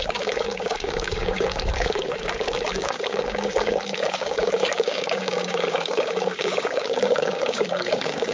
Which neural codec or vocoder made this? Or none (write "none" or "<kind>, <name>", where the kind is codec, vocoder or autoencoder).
codec, DAC